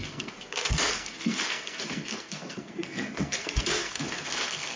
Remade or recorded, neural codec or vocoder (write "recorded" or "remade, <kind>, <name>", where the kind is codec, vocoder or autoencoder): remade, codec, SNAC